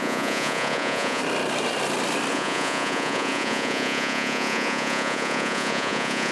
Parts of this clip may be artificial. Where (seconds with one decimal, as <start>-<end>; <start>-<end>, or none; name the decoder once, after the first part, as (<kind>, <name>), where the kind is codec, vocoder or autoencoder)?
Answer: 0.0-1.2 (vocoder, Vocos); 2.3-6.3